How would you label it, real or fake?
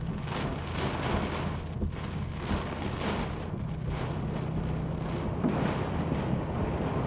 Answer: real